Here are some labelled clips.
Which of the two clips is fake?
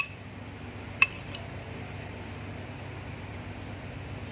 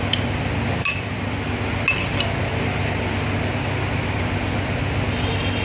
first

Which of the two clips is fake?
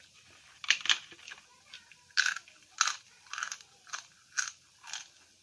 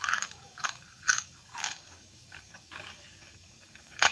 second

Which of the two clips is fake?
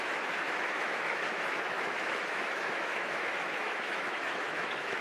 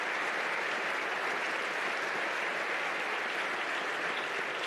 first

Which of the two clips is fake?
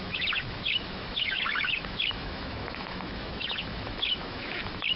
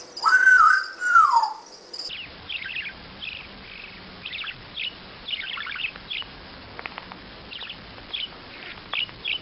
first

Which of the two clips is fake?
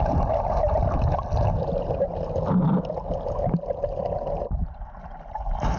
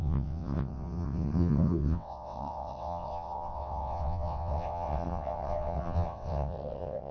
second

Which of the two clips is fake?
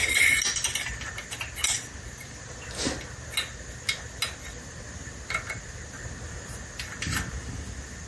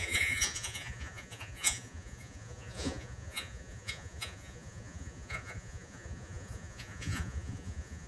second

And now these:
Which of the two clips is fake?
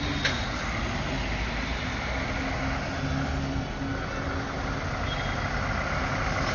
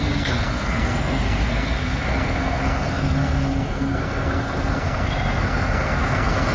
second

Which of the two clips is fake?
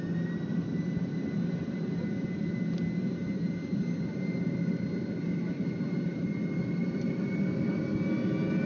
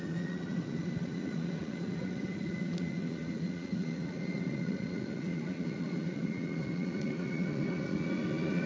second